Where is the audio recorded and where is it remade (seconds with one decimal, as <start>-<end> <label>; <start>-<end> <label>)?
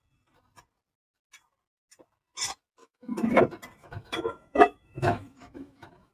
0.0-2.8 recorded; 2.8-3.4 remade; 3.4-3.8 recorded; 3.8-6.1 remade